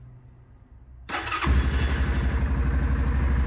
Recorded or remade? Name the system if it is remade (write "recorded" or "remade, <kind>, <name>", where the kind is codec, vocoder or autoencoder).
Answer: recorded